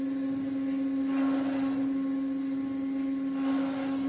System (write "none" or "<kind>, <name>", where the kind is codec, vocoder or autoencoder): none